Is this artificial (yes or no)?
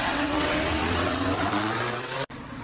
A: yes